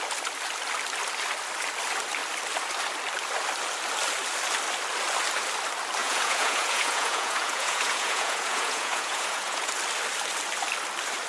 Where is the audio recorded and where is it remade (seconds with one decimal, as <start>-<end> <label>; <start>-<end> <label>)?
0.0-6.0 recorded; 6.0-9.7 remade; 9.7-11.3 recorded

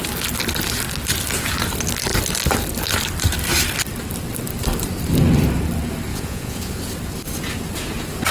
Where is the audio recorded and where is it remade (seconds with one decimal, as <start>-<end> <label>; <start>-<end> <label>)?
0.0-6.1 recorded; 6.1-6.8 remade; 6.8-8.3 recorded

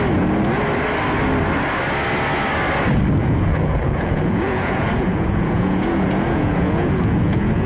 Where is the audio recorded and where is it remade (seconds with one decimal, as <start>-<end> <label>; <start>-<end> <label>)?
0.0-3.2 recorded; 3.2-7.7 remade

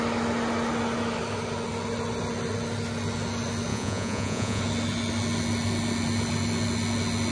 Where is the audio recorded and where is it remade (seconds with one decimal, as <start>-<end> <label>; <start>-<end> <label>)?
0.0-3.7 recorded; 3.7-4.6 remade; 4.6-7.3 recorded

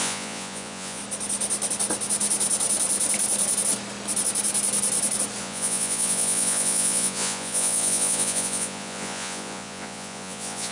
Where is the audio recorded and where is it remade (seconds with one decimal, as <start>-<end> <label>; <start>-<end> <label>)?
0.0-1.0 remade; 1.0-5.4 recorded; 5.4-10.7 remade